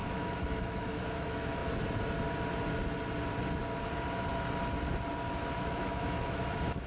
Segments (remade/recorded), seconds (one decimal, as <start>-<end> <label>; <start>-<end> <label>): 0.0-1.6 remade; 1.6-5.6 recorded; 5.6-6.9 remade